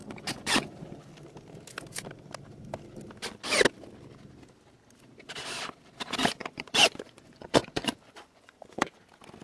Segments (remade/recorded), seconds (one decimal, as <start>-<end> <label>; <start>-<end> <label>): 0.0-1.0 remade; 1.0-6.4 recorded; 6.4-9.0 remade; 9.0-9.4 recorded